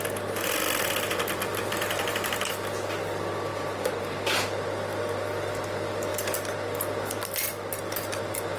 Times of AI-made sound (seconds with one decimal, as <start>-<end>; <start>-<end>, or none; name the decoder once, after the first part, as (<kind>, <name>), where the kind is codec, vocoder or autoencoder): 1.1-2.5 (vocoder, BigVGAN v2)